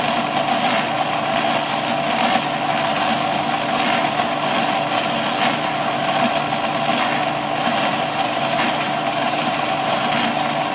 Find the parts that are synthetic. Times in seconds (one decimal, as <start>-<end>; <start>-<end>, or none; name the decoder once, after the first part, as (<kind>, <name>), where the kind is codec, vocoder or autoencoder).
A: 7.6-10.1 (vocoder, BigVGAN v2)